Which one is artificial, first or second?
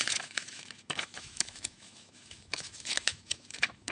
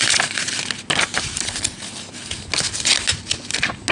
first